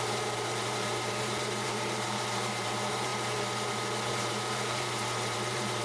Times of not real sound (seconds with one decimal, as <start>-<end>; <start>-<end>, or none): 0.0-3.1; 4.1-5.8